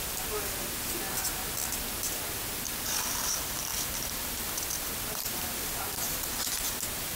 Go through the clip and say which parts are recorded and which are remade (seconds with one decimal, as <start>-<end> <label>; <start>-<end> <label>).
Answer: 0.0-3.7 recorded; 3.7-6.2 remade; 6.2-7.2 recorded